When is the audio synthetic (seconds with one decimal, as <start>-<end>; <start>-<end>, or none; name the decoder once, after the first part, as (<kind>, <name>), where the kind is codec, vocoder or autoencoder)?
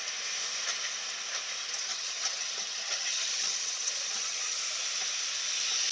1.9-4.6 (vocoder, HiFi-GAN)